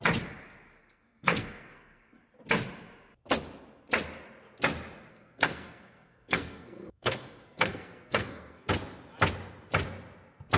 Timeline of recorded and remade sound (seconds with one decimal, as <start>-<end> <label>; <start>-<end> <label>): 0.0-0.8 recorded; 0.8-2.2 remade; 2.2-5.1 recorded; 5.1-8.7 remade; 8.7-10.6 recorded